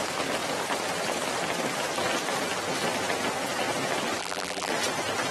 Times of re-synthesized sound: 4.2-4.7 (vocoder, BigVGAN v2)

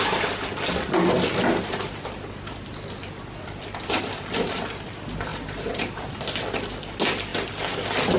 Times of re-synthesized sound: 5.3-6.1 (vocoder, BigVGAN v2)

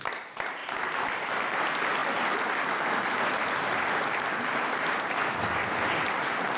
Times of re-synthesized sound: 0.6-1.6 (vocoder, BigVGAN v2)

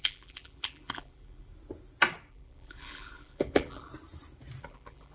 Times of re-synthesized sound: 0.0-1.5 (vocoder, BigVGAN v2); 2.3-3.9; 4.6-5.1

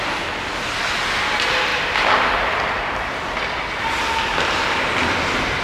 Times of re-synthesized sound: 1.7-3.3 (vocoder, BigVGAN v2); 4.3-4.9